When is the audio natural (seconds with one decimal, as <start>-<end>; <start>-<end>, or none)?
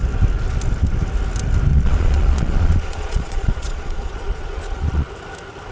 0.0-1.7; 5.1-5.7